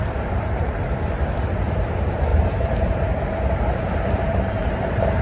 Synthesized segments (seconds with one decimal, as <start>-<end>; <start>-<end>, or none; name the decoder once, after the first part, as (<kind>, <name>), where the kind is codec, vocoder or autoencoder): 0.0-5.2 (vocoder, BigVGAN v2)